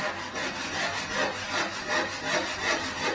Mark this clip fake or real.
real